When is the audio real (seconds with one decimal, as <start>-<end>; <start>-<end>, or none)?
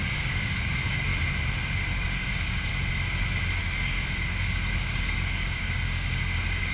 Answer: 1.1-1.8; 2.7-3.6